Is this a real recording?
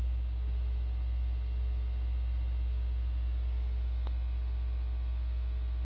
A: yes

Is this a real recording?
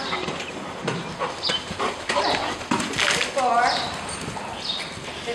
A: yes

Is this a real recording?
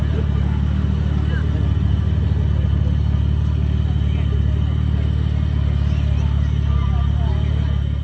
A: yes